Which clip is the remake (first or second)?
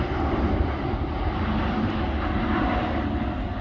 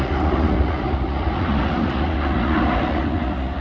second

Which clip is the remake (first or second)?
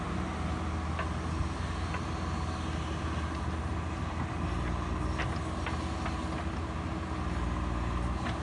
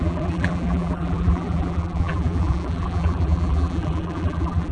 second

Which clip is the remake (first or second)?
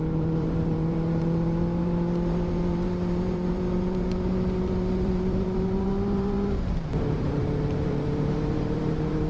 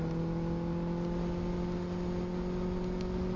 first